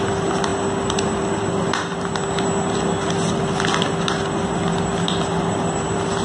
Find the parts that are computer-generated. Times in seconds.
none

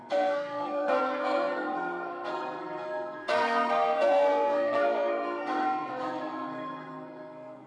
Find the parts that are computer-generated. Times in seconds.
0.0-7.7 (codec, SNAC)

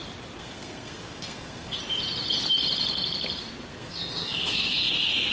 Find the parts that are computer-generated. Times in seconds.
0.4-1.8 (codec, SNAC); 3.7-5.3

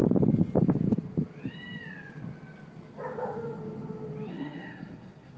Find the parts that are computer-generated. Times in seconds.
4.3-5.4 (codec, SNAC)